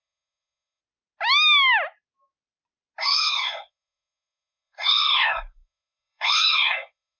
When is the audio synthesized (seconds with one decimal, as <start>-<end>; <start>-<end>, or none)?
0.0-0.8; 3.0-7.2